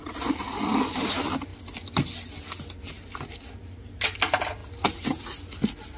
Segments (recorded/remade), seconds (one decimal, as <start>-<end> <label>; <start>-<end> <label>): 0.0-6.0 recorded